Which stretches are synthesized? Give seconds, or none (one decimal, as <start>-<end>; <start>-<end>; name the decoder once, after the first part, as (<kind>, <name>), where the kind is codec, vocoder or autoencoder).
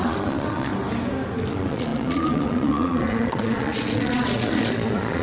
0.0-0.7 (vocoder, Vocos); 1.5-5.2